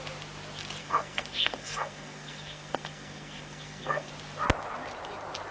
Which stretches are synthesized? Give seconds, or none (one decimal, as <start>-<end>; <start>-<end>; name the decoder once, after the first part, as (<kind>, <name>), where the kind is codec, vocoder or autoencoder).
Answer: 0.8-4.1 (codec, SNAC)